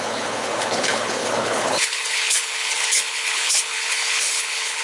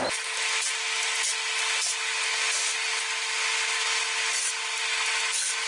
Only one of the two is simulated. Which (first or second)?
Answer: first